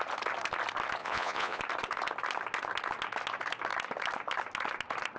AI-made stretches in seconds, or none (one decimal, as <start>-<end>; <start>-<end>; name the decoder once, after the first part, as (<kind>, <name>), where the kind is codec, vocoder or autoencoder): 1.0-1.6 (vocoder, Vocos)